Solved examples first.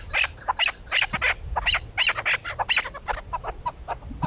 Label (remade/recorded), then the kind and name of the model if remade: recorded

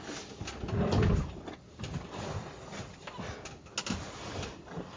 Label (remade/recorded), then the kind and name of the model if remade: recorded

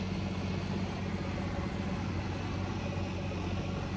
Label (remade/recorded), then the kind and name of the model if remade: recorded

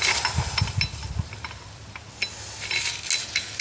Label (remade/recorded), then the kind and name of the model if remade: recorded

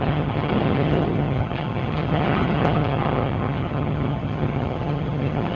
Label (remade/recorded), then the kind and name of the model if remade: remade, vocoder, HiFi-GAN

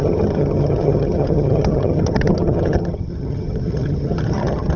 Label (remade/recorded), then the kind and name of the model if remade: remade, vocoder, HiFi-GAN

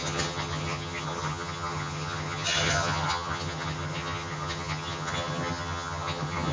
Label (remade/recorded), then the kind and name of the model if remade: remade, vocoder, HiFi-GAN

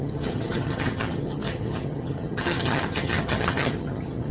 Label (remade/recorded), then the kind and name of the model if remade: remade, vocoder, HiFi-GAN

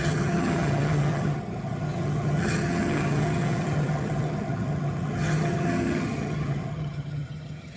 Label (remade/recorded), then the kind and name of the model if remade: remade, vocoder, HiFi-GAN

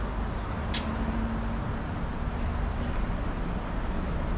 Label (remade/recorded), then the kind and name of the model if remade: recorded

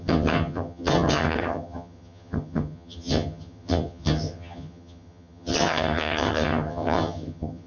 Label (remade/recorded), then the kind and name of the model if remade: remade, vocoder, HiFi-GAN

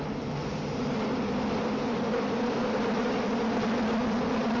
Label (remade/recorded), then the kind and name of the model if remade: recorded